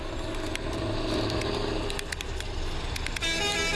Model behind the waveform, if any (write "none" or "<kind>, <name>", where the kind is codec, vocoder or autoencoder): none